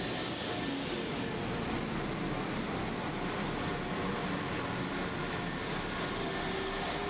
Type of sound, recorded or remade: recorded